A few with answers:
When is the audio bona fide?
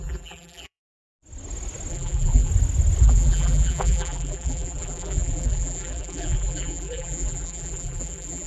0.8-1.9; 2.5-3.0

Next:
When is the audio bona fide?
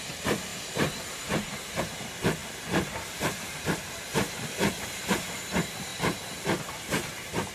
5.9-6.7